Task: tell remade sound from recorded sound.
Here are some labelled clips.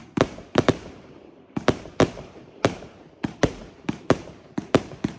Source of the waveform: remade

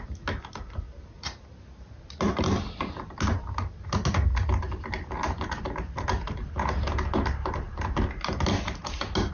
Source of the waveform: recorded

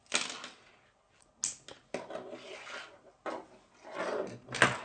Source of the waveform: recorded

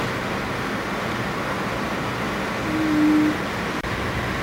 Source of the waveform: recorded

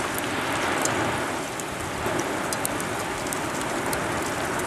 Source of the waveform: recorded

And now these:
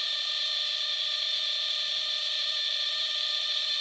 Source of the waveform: remade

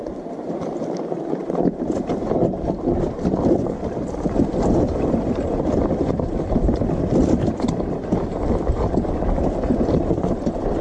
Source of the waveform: remade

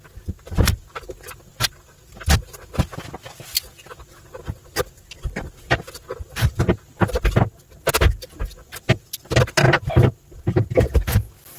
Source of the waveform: recorded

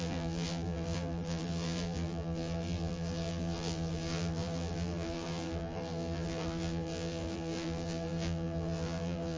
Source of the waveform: remade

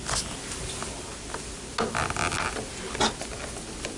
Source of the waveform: recorded